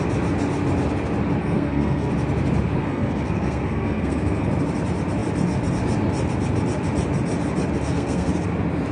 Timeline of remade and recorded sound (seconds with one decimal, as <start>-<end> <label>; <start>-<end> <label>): 0.0-1.4 recorded; 1.4-2.1 remade; 2.1-2.8 recorded; 2.8-4.5 remade; 4.5-7.8 recorded; 7.8-8.3 remade; 8.3-8.9 recorded